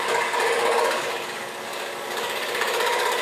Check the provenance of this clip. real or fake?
fake